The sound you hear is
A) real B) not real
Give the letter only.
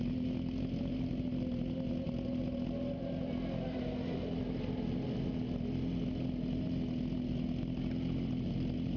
A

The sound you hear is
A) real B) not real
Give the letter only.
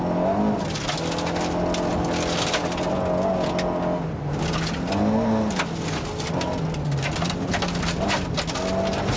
A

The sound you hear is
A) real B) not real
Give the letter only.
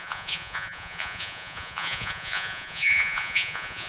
B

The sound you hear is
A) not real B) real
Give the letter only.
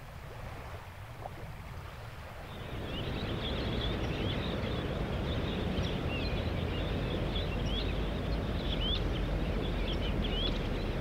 B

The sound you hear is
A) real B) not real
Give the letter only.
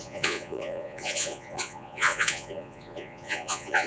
B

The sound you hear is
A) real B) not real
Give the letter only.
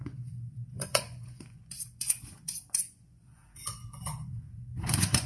B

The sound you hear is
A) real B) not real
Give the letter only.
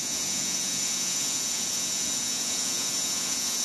B